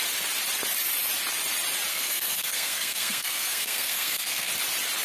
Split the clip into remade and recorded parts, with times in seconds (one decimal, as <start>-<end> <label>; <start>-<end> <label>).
0.0-1.9 recorded; 1.9-4.5 remade; 4.5-5.0 recorded